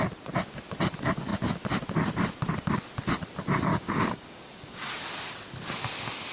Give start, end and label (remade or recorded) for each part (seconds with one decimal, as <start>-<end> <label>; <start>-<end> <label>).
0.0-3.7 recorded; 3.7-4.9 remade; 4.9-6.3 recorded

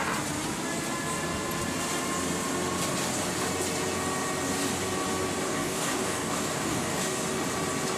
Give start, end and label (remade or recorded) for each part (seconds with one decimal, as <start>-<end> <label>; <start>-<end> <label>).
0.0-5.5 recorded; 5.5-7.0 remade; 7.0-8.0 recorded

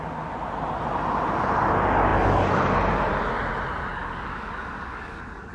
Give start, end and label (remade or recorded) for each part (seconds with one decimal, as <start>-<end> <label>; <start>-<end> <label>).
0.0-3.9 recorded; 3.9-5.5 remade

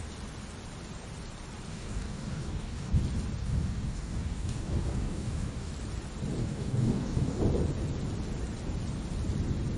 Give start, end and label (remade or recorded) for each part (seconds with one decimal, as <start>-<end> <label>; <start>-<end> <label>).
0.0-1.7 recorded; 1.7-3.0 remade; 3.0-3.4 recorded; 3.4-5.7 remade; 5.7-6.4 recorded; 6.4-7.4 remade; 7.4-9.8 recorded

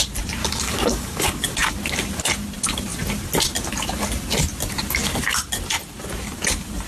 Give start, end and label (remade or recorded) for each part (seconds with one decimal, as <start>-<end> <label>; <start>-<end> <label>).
0.0-0.4 recorded; 0.4-1.7 remade; 1.7-6.9 recorded

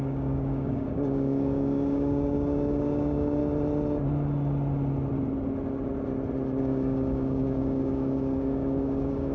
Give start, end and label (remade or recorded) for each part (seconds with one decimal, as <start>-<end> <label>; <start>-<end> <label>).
0.0-3.4 remade; 3.4-6.6 recorded; 6.6-9.3 remade

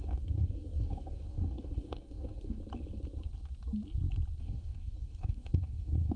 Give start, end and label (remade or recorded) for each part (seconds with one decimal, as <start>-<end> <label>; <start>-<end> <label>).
0.0-2.6 remade; 2.6-4.4 recorded; 4.4-6.2 remade